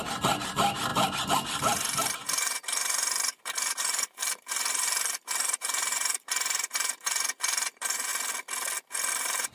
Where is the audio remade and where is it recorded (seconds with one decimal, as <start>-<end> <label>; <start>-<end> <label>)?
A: 0.0-8.1 remade; 8.1-9.1 recorded; 9.1-9.5 remade